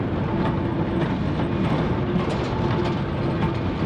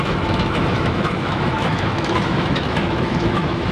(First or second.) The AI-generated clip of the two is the second